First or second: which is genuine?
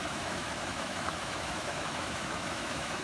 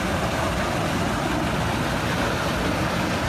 second